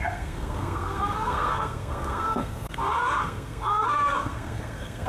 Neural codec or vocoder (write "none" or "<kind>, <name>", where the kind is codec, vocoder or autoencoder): codec, SNAC